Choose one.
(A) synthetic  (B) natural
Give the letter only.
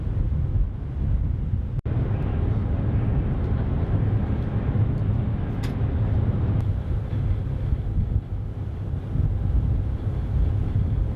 B